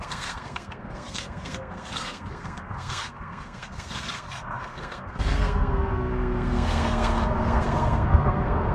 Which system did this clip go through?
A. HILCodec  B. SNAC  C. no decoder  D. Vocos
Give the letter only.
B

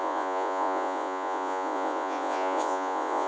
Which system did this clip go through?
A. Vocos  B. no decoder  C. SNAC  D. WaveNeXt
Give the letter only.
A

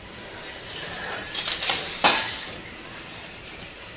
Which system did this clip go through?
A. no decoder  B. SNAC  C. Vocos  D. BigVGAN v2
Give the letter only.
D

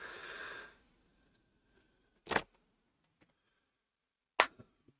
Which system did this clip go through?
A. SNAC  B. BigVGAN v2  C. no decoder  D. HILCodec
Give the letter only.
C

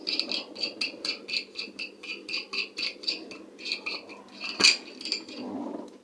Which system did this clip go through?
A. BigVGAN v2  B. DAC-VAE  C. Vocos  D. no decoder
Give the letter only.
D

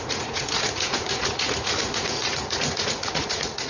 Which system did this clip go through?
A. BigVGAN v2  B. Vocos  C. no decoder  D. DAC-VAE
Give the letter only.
B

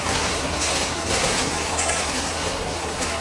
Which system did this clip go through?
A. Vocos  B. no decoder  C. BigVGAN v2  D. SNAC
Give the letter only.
D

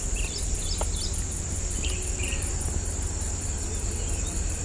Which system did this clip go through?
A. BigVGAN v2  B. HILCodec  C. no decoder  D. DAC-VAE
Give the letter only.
C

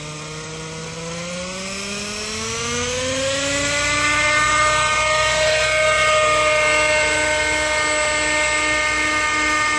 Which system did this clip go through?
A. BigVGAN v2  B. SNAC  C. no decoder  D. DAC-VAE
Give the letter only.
C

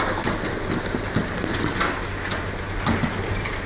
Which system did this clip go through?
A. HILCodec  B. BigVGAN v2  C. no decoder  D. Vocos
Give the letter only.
C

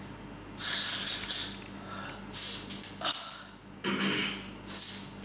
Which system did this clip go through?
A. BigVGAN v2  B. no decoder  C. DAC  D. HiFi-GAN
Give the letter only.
B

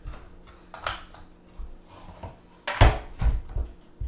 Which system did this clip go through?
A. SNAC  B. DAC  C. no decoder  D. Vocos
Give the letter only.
C